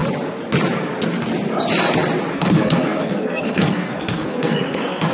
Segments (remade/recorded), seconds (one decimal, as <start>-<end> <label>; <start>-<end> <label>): 0.0-2.3 recorded; 2.3-5.1 remade